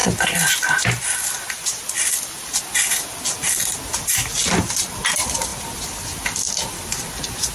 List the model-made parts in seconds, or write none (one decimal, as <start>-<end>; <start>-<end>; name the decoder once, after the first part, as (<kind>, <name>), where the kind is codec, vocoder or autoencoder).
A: none